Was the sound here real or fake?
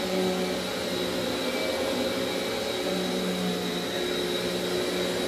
real